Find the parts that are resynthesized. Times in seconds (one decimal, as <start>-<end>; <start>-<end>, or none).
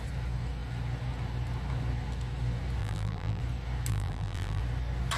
2.8-3.4; 3.9-4.6